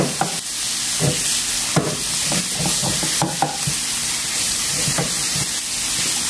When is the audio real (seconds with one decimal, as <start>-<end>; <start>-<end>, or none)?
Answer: 0.0-4.0; 5.5-6.3